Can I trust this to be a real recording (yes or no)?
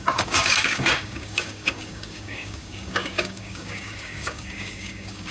no